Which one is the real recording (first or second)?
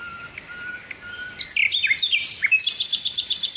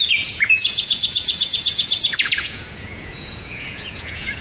first